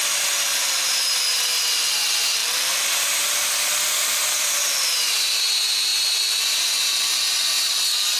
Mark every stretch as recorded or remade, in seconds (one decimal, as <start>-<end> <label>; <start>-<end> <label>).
0.0-8.2 recorded